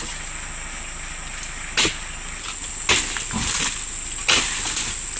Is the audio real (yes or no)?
yes